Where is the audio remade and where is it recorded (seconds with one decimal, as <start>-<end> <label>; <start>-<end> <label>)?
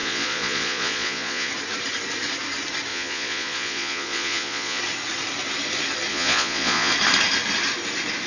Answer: 0.0-1.5 remade; 1.5-2.9 recorded; 2.9-4.8 remade; 4.8-6.1 recorded; 6.1-6.9 remade; 6.9-8.3 recorded